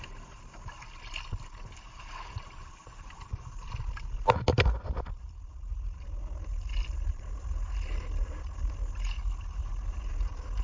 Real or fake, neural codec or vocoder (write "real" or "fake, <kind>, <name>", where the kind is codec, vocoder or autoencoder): real